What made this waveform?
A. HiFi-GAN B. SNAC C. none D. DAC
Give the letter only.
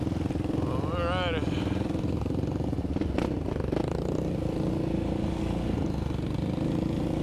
C